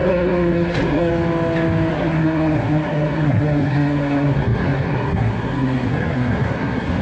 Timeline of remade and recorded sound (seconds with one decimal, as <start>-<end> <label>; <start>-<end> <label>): 0.0-1.1 remade; 1.1-1.9 recorded; 1.9-7.0 remade